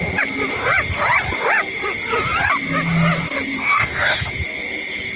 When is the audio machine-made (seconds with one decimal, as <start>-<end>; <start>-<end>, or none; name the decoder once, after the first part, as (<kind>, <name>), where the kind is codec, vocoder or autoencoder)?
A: 3.6-4.3 (codec, DAC)